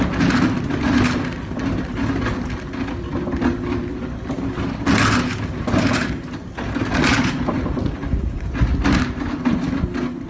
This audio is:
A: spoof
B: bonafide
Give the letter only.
B